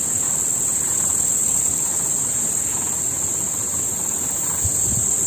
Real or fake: real